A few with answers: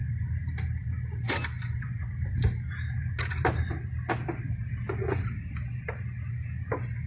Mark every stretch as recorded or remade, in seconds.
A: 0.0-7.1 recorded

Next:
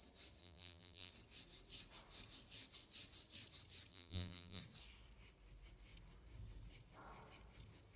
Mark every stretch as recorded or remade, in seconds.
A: 0.0-0.4 recorded; 0.4-1.1 remade; 1.1-3.9 recorded; 3.9-4.6 remade; 4.6-8.0 recorded

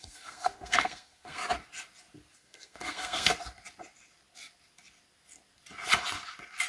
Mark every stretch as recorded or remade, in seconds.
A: 0.0-1.4 remade; 1.4-2.3 recorded; 2.3-3.3 remade; 3.3-6.7 recorded

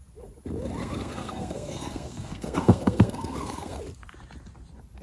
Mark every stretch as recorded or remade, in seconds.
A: 0.0-0.8 recorded; 0.8-3.8 remade; 3.8-5.0 recorded

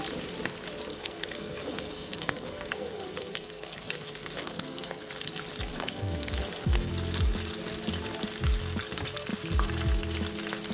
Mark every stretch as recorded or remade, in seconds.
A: 0.0-0.9 recorded; 0.9-5.1 remade; 5.1-5.7 recorded; 5.7-6.9 remade; 6.9-10.7 recorded